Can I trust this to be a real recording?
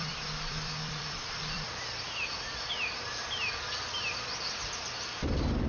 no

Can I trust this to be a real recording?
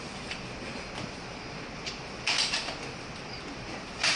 no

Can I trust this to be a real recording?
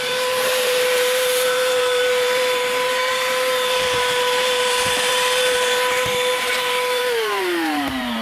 no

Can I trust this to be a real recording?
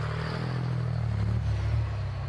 yes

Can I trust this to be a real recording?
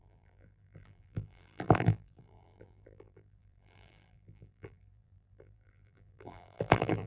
no